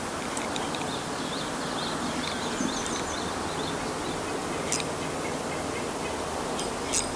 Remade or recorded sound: recorded